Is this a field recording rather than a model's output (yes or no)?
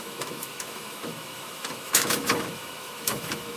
no